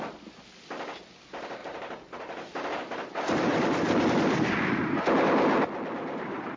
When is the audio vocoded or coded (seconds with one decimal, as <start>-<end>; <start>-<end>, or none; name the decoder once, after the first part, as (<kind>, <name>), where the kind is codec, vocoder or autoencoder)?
1.6-5.0 (vocoder, BigVGAN v2)